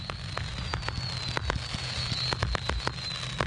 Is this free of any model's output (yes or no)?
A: yes